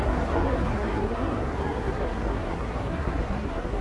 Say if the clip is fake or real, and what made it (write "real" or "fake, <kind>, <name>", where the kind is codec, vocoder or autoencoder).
fake, codec, SNAC